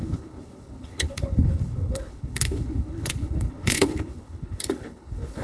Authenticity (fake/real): fake